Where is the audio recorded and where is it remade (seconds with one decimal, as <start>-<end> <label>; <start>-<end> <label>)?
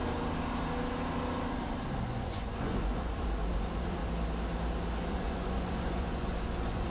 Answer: 0.0-2.0 recorded; 2.0-4.0 remade; 4.0-5.1 recorded; 5.1-6.9 remade